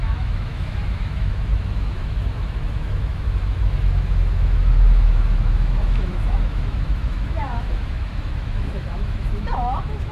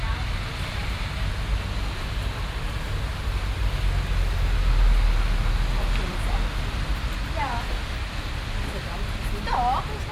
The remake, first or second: first